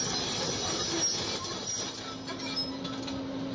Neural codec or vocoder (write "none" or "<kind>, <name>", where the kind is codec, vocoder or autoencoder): none